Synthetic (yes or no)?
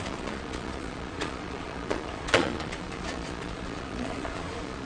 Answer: yes